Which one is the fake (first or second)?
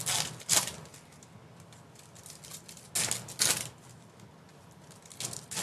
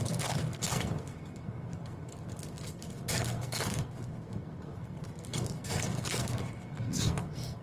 second